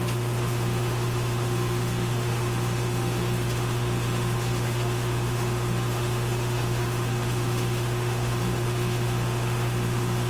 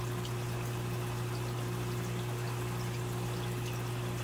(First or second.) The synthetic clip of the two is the first